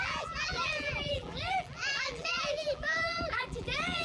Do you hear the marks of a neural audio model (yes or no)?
yes